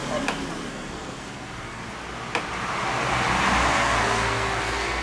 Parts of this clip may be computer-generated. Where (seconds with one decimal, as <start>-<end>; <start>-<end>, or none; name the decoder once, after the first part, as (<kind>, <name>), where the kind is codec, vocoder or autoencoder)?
0.7-1.8 (codec, SNAC); 3.7-5.0